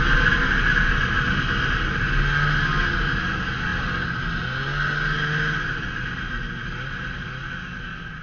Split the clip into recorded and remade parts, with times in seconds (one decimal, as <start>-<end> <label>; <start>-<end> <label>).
0.0-8.2 recorded